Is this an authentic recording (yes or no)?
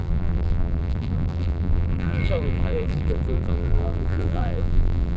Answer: no